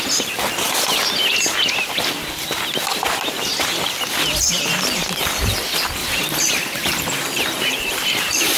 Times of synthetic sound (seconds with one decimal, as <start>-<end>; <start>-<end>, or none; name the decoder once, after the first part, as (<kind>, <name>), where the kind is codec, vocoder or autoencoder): 6.0-8.6 (vocoder, BigVGAN v2)